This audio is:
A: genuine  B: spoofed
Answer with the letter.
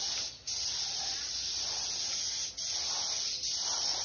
A